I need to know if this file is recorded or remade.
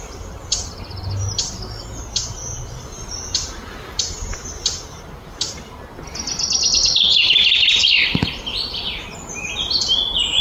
recorded